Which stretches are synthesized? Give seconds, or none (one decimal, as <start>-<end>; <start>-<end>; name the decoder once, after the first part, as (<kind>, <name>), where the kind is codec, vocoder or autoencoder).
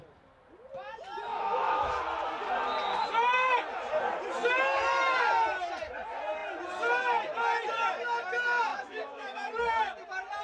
1.3-1.9 (autoencoder, DAC-VAE); 8.7-9.5